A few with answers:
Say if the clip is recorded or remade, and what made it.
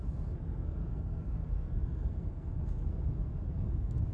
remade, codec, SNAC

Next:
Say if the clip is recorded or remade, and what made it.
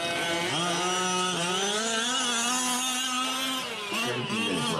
recorded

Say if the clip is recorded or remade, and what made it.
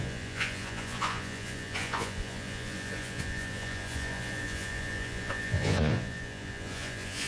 remade, vocoder, Vocos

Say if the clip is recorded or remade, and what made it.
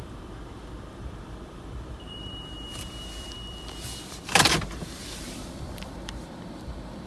remade, vocoder, BigVGAN v2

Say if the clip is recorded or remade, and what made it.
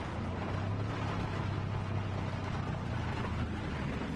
recorded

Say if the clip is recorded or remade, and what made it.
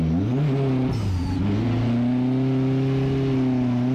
recorded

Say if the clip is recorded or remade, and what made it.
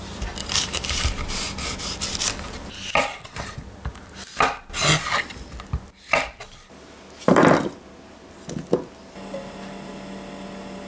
recorded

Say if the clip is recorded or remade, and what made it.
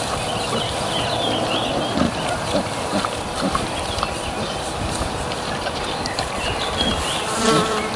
remade, vocoder, BigVGAN v2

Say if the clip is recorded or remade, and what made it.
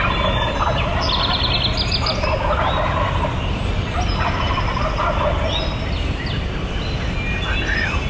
recorded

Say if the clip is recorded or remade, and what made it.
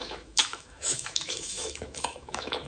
remade, autoencoder, DAC-VAE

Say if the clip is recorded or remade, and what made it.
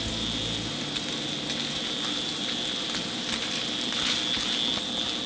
recorded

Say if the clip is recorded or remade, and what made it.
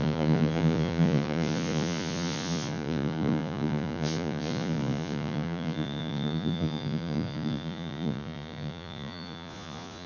remade, vocoder, Vocos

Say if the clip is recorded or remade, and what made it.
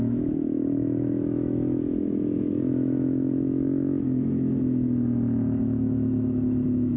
remade, autoencoder, DAC-VAE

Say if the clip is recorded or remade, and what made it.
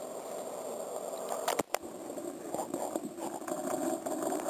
recorded